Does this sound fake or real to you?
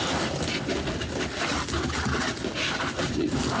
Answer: real